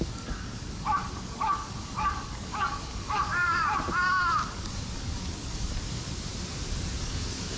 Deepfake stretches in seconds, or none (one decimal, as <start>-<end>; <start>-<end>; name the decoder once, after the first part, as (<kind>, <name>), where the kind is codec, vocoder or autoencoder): 0.0-3.4 (codec, DAC); 4.5-6.3; 7.0-7.6